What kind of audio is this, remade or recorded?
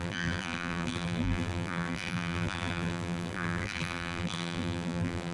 remade